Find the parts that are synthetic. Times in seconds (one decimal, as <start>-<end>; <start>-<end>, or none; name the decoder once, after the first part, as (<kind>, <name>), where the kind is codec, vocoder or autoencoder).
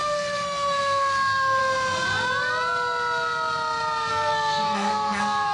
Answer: 0.0-1.6 (codec, SNAC); 4.1-5.5